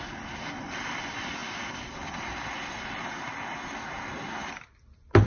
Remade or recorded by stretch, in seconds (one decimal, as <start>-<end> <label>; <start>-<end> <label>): 0.0-5.3 recorded